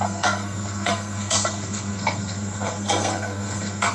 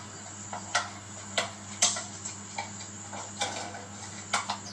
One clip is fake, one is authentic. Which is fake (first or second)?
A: first